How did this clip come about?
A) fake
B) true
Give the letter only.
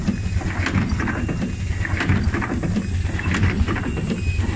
B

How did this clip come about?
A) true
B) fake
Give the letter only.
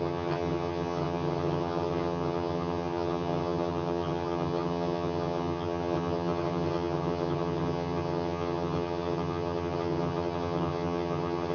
B